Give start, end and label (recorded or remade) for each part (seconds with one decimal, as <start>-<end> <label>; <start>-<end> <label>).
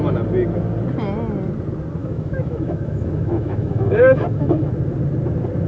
0.0-2.0 recorded; 2.0-4.7 remade; 4.7-5.7 recorded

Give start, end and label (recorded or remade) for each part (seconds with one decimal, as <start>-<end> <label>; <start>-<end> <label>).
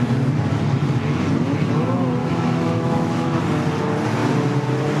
0.0-2.2 recorded; 2.2-3.4 remade; 3.4-5.0 recorded